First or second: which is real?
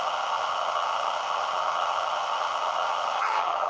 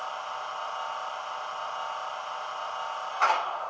second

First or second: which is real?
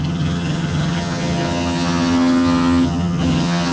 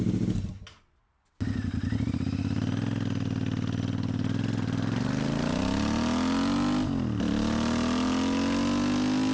second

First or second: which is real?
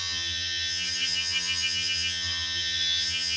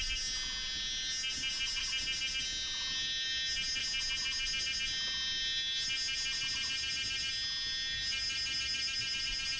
second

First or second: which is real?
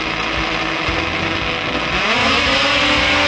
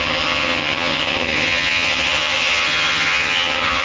first